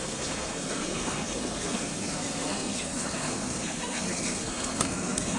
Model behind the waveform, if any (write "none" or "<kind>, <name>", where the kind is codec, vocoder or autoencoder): codec, SNAC